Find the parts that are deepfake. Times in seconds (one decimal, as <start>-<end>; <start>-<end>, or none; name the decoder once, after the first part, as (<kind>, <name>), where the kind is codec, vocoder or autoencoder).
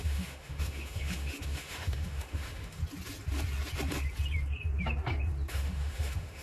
0.0-2.8 (autoencoder, DAC-VAE); 5.5-6.4